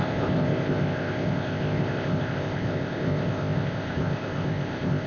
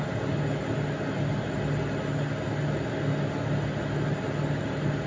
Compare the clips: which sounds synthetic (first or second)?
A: first